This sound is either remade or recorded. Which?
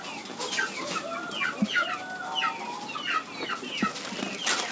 recorded